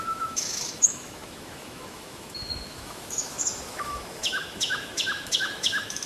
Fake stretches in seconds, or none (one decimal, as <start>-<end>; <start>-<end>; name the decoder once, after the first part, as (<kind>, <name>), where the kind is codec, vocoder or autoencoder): 0.0-6.1 (autoencoder, DAC-VAE)